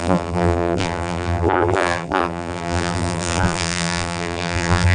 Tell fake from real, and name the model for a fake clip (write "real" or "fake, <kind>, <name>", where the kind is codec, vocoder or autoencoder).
fake, vocoder, BigVGAN v2